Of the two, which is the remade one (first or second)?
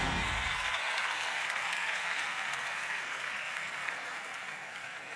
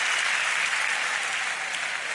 first